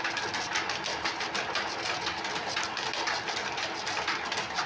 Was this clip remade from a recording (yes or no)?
no